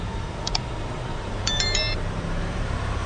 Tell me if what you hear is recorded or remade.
remade